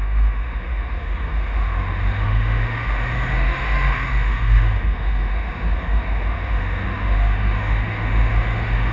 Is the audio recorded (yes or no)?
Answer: no